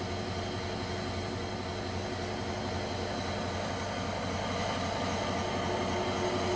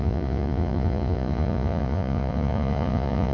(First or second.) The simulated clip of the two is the second